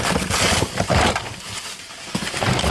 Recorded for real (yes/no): no